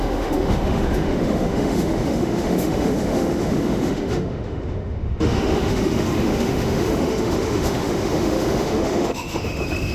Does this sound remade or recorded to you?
remade